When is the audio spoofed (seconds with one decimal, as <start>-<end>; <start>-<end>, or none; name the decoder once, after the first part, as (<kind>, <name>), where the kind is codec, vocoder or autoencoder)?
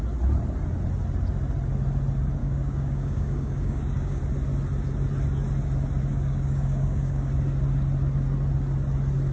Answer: 2.4-4.2 (codec, DAC); 6.1-7.3